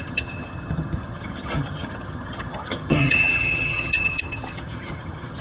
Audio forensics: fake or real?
fake